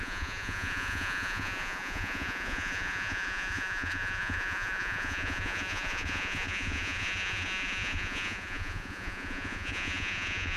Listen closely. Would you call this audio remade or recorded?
remade